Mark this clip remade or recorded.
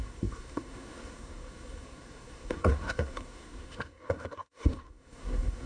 remade